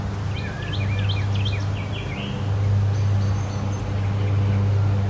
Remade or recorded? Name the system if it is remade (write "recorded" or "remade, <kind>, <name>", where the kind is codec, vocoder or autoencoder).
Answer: recorded